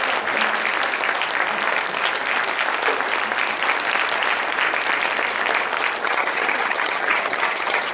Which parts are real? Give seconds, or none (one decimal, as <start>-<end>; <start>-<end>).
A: 0.0-6.0